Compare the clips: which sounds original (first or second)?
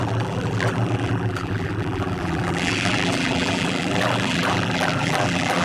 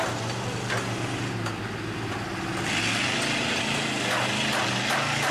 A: second